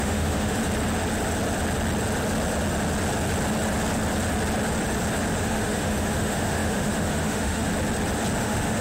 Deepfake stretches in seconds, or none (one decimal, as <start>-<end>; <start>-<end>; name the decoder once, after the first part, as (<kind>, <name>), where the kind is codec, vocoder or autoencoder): 0.0-0.6 (autoencoder, DAC-VAE); 5.4-7.7; 8.4-8.8

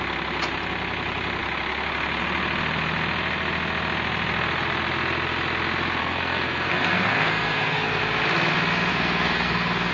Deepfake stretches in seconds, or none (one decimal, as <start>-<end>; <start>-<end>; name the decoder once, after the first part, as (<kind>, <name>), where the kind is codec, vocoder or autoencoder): 6.0-8.0 (codec, SNAC); 8.9-9.9

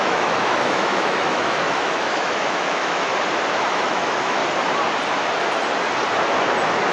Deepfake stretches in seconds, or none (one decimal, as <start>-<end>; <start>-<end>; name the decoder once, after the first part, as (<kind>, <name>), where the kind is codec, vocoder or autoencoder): 0.0-3.1 (autoencoder, DAC-VAE); 3.7-4.4

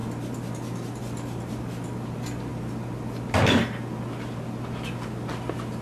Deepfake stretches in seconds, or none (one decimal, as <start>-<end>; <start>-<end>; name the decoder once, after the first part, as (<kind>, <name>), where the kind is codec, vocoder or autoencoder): none

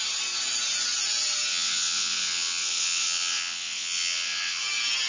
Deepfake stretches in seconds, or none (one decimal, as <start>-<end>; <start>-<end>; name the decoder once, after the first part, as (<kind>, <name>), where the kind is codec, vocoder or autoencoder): 1.5-4.6 (vocoder, WaveNeXt)

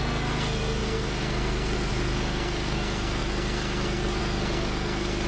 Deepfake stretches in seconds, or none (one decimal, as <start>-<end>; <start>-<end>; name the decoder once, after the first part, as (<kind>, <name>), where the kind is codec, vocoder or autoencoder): 0.0-5.3 (codec, SNAC)